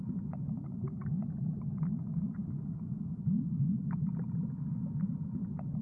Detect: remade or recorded recorded